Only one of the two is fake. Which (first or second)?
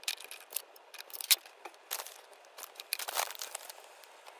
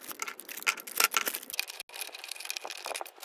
first